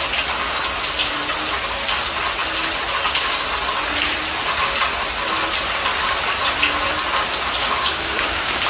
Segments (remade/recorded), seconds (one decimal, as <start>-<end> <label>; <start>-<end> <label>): 0.0-7.6 recorded; 7.6-8.7 remade